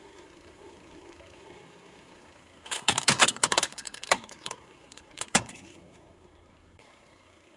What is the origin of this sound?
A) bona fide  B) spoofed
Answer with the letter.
B